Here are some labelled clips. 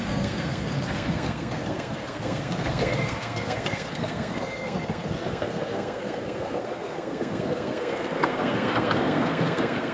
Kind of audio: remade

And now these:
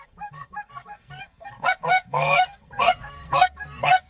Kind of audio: remade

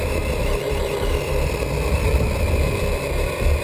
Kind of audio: remade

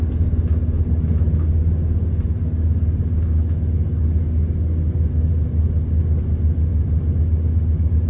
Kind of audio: recorded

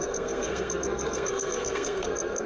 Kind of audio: remade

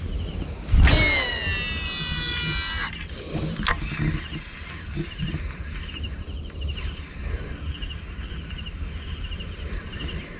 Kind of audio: recorded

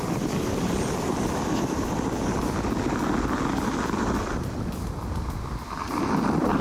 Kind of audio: recorded